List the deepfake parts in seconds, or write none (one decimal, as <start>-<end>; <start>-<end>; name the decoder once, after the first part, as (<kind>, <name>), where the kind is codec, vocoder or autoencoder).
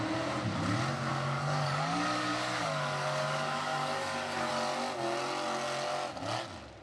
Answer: 1.1-4.5 (codec, DAC)